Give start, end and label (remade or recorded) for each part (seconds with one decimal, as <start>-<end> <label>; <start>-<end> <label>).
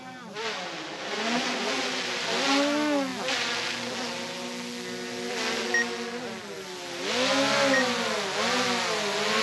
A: 0.0-9.4 recorded